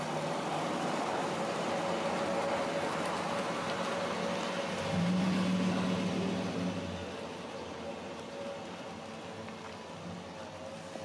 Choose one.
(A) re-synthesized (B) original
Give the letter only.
B